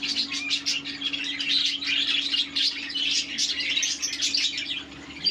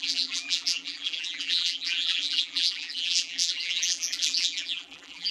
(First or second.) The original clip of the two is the first